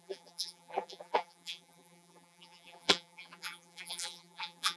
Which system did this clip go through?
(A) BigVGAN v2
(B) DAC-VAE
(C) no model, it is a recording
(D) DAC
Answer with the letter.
A